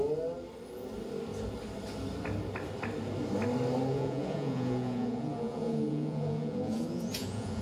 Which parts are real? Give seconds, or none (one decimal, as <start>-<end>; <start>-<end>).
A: 0.0-3.9

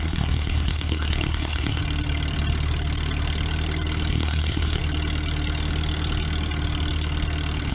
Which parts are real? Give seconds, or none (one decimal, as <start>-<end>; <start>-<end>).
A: 1.8-4.1; 4.8-7.7

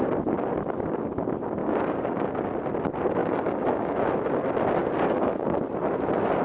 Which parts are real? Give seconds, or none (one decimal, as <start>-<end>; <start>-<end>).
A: 0.0-1.6; 2.3-3.2; 4.0-4.8; 5.6-6.4

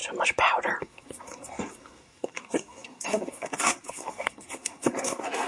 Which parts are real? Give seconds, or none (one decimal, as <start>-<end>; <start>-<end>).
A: 0.0-0.8

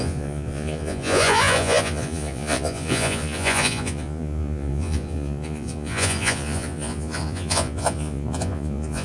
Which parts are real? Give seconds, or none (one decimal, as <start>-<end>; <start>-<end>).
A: none

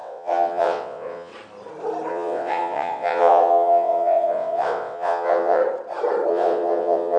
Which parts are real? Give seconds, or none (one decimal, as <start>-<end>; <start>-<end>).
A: 1.3-2.1; 5.6-6.3